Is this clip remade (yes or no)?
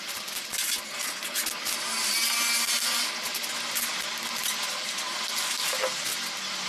no